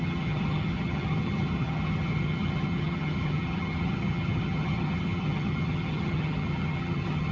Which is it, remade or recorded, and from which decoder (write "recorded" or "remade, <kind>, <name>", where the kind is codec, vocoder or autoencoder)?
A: remade, vocoder, HiFi-GAN